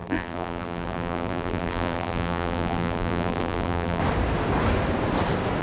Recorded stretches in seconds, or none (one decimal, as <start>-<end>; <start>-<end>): 4.0-5.6